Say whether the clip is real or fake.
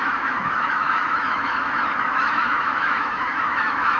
fake